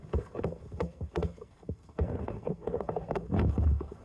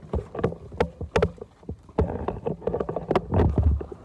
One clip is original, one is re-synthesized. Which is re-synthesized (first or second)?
first